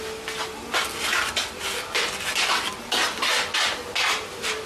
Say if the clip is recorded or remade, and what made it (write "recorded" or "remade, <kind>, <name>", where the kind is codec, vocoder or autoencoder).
recorded